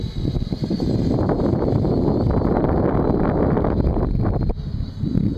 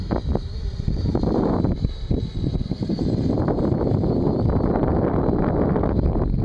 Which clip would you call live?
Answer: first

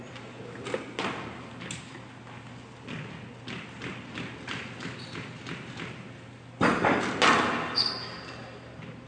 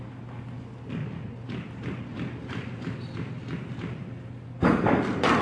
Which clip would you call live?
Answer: first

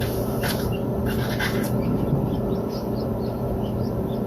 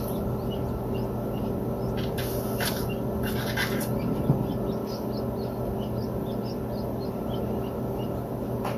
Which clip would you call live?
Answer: second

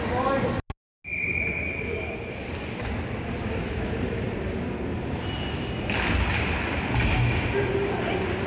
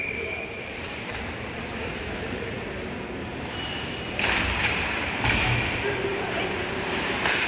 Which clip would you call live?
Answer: first